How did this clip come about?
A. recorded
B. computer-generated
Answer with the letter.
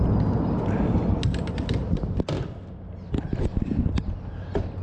A